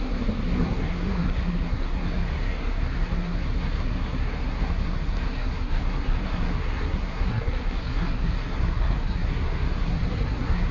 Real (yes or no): no